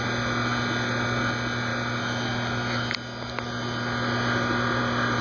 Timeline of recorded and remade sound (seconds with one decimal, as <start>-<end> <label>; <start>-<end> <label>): 0.0-5.2 recorded